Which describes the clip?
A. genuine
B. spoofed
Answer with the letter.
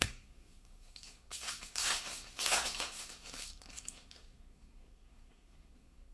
B